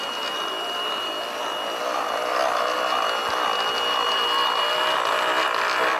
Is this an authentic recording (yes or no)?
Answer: yes